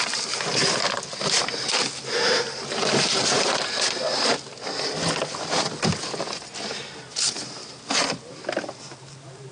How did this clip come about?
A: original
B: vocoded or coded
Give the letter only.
A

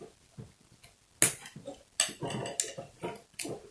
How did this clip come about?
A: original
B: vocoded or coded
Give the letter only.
A